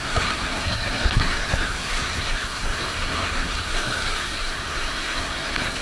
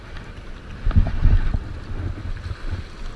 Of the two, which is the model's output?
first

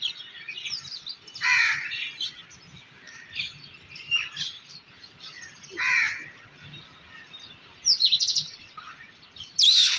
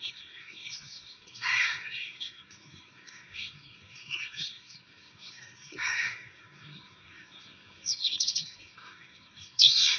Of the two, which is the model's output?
second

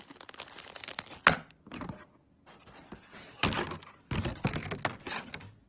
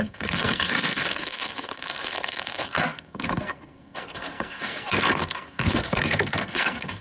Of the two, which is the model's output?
second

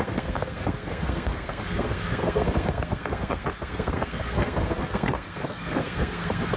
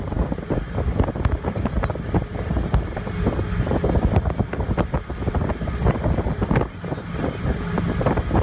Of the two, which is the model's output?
first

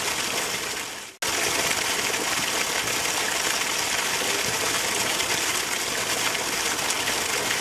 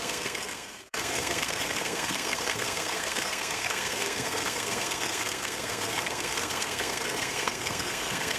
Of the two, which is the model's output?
second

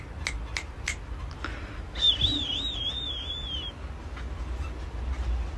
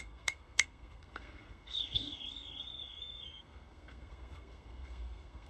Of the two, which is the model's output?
second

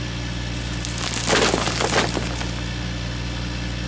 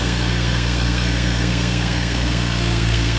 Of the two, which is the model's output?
second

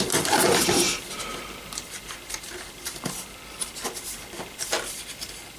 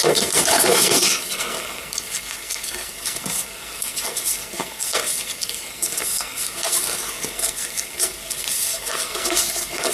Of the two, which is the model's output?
second